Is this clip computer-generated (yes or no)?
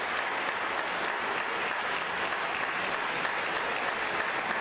no